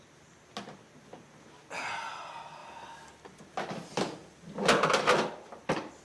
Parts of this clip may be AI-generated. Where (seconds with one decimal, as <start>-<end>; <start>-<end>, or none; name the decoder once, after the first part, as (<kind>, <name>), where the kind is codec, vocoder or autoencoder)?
none